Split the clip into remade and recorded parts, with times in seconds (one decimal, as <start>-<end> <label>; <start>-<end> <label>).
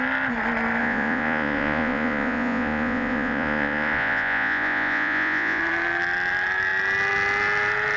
0.0-0.8 recorded; 0.8-5.6 remade; 5.6-8.0 recorded